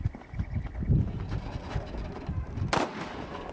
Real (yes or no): yes